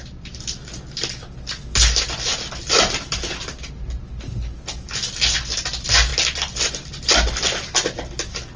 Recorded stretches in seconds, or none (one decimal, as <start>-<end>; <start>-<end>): 0.0-8.6